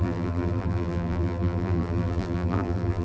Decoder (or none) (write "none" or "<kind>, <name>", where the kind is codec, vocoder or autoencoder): vocoder, BigVGAN v2